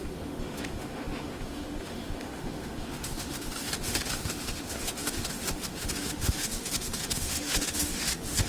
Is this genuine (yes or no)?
no